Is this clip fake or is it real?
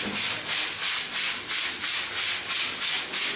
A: real